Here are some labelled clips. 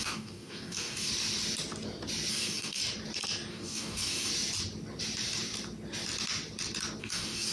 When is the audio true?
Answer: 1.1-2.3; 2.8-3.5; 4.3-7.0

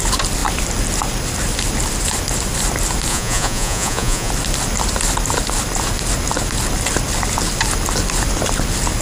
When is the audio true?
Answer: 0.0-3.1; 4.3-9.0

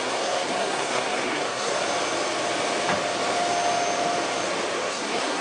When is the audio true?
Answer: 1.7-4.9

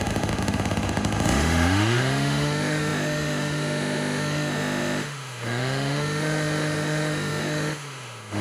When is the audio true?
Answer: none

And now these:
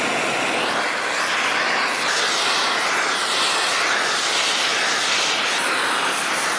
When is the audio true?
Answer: 0.0-6.6

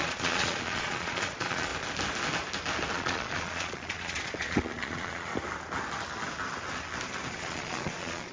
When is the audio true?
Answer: 1.7-2.9; 5.3-7.3

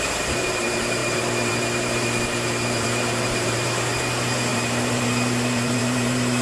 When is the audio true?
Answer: none

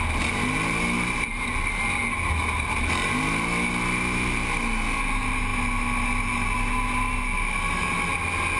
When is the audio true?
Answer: 0.0-8.6